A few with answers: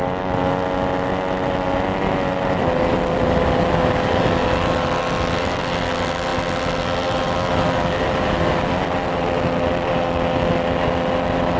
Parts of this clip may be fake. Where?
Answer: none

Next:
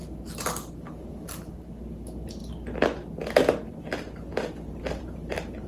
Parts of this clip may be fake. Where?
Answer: none

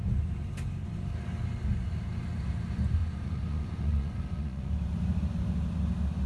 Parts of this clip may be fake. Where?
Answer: 3.0-4.7 (vocoder, Vocos)

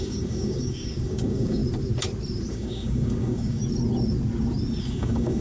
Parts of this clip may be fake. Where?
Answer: 0.0-1.6 (codec, DAC); 2.5-3.6; 4.8-5.4

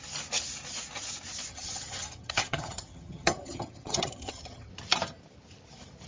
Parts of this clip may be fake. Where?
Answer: 1.5-4.7 (vocoder, HiFi-GAN)

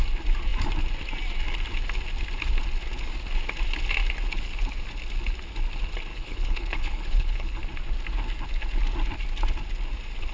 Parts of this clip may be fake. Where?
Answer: 6.1-7.6 (codec, HILCodec)

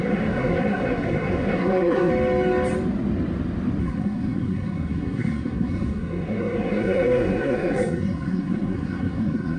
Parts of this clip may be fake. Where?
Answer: 0.0-2.1 (codec, SNAC); 3.8-9.6